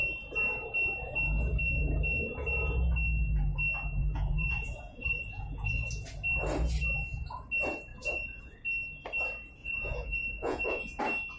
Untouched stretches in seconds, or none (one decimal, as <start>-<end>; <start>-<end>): 0.0-4.0; 5.9-7.9; 8.5-9.6; 11.0-11.4